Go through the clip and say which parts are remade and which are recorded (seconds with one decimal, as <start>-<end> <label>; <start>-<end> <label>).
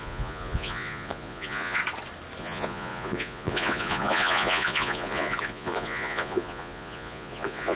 0.0-1.8 remade; 1.8-2.4 recorded; 2.4-7.8 remade